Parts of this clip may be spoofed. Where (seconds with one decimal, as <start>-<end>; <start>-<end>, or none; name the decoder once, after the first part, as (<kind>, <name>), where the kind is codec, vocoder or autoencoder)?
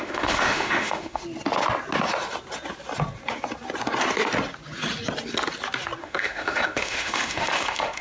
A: 0.0-1.2 (autoencoder, DAC-VAE); 6.0-8.0